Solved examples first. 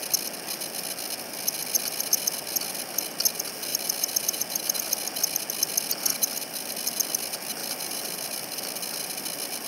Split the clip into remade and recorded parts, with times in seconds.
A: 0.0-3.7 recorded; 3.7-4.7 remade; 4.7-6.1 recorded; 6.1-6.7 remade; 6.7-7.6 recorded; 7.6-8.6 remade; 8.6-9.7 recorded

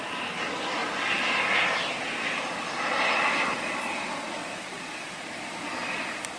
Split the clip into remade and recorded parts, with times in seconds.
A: 0.0-0.8 recorded; 0.8-1.5 remade; 1.5-6.4 recorded